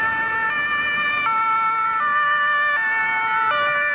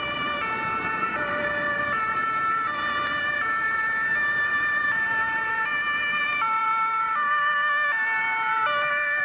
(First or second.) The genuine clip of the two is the first